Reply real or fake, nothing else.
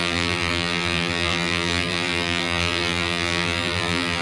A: fake